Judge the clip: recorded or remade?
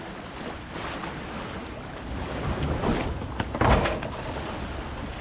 recorded